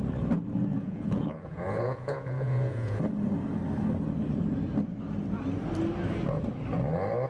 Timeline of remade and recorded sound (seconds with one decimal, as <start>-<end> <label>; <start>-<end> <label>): 0.0-0.7 recorded; 0.7-3.0 remade; 3.0-7.3 recorded